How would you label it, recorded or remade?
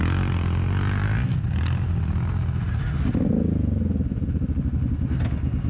recorded